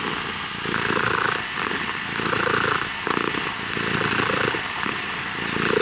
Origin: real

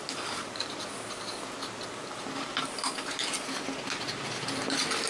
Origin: real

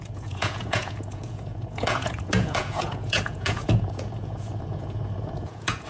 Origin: fake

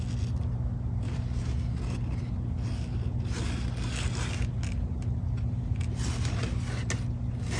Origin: real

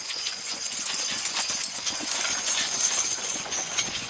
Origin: fake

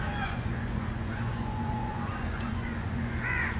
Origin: fake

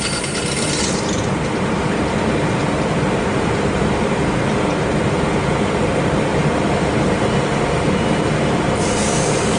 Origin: fake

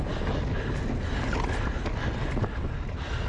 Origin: real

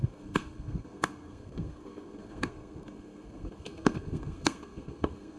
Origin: fake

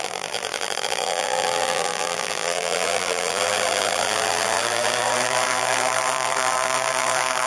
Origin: fake